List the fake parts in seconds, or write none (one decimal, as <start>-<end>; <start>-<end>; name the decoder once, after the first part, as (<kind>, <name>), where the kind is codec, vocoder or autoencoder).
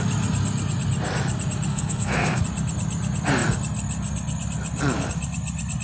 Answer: 1.7-2.4 (codec, SNAC)